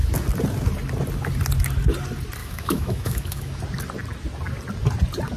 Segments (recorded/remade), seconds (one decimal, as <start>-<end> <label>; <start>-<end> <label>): 0.0-2.4 recorded; 2.4-3.6 remade; 3.6-5.4 recorded